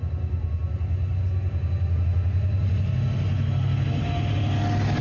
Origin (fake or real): real